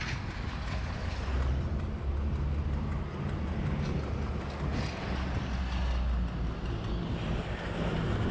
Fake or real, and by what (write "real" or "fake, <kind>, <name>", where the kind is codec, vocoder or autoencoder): real